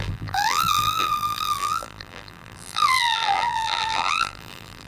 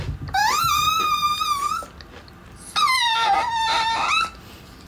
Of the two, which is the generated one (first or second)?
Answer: first